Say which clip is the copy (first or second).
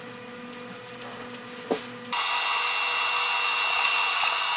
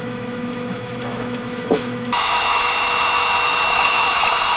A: second